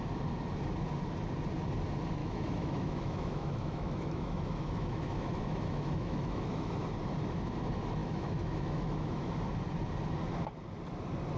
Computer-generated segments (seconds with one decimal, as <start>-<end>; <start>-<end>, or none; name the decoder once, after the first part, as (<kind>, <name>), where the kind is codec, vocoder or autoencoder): 2.2-6.7 (autoencoder, DAC-VAE); 8.0-9.3